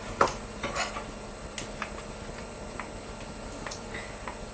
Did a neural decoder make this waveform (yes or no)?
no